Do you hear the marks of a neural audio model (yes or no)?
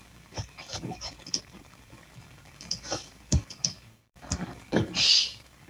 yes